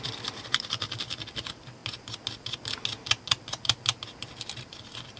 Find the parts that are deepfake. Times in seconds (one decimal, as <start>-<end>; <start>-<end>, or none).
none